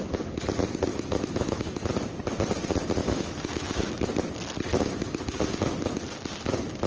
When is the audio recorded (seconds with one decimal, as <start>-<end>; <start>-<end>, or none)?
0.0-0.9; 1.9-3.0; 3.9-4.7; 5.4-6.9